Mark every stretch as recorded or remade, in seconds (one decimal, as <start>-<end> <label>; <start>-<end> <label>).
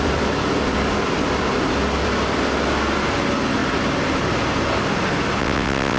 0.0-5.4 recorded; 5.4-6.0 remade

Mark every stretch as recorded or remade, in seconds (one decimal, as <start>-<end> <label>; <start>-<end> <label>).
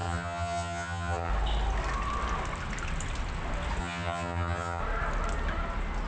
0.0-1.3 remade; 1.3-3.8 recorded; 3.8-4.8 remade; 4.8-6.1 recorded